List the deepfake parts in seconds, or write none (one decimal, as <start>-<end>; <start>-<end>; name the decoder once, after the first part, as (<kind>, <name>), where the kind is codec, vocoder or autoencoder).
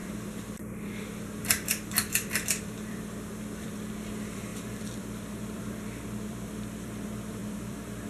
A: 0.0-8.1 (vocoder, BigVGAN v2)